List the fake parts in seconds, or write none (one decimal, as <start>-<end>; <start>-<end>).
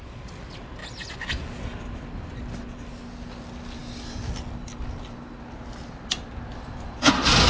none